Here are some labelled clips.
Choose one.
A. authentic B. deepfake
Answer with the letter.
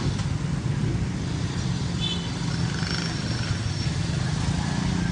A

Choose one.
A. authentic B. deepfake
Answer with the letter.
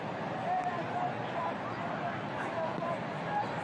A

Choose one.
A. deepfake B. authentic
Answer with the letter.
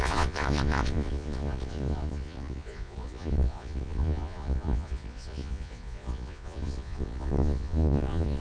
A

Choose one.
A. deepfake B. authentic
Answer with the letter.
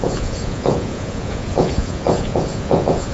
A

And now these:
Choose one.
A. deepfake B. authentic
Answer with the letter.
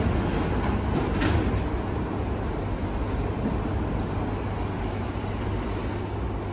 B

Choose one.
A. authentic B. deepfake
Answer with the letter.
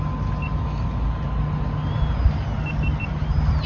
A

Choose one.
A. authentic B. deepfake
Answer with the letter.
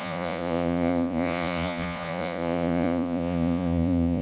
B